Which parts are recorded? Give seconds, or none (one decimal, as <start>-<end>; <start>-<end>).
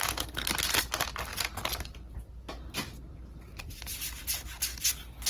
0.0-5.3